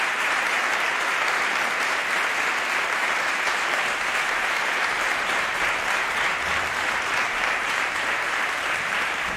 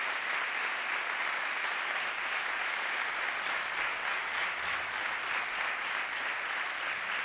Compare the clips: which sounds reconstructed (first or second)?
first